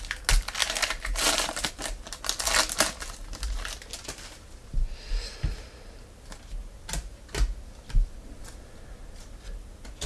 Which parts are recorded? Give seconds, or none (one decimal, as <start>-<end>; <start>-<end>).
0.0-0.6; 1.7-10.1